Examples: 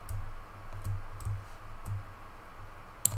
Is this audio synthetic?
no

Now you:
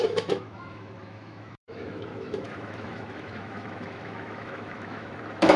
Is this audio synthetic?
yes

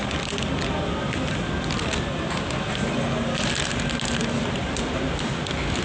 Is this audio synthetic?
no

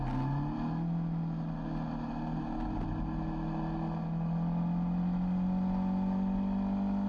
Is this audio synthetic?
no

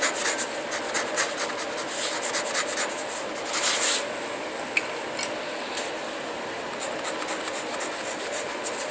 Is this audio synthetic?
no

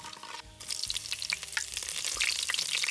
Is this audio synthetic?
no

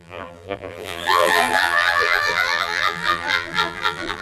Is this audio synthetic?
yes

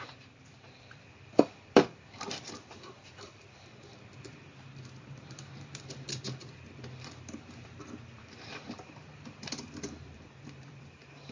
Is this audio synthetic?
yes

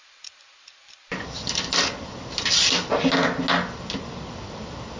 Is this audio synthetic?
no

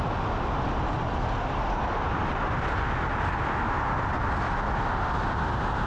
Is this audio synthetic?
no